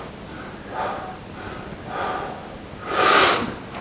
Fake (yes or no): no